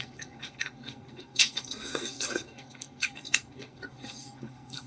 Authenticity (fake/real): fake